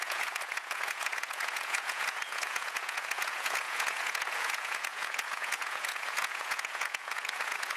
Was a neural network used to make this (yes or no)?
yes